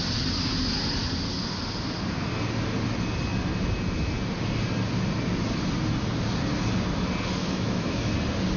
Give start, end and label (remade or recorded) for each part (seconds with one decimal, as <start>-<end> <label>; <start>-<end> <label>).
0.0-7.4 recorded; 7.4-8.1 remade; 8.1-8.6 recorded